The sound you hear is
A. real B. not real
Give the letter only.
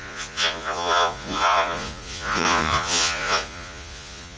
B